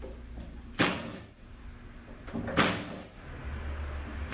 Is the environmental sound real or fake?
real